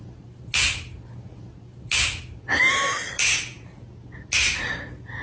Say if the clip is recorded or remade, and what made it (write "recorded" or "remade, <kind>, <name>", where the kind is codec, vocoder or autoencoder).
recorded